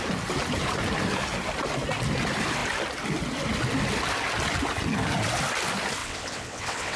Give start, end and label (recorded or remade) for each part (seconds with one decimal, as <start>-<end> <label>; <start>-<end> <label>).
0.0-6.0 recorded; 6.0-7.0 remade